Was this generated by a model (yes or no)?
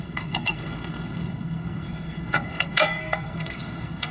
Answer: yes